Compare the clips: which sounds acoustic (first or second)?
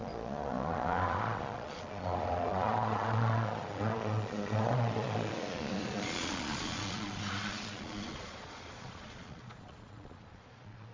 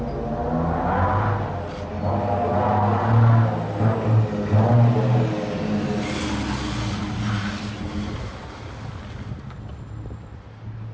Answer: second